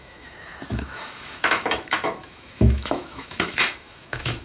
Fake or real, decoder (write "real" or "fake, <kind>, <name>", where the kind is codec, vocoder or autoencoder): fake, autoencoder, DAC-VAE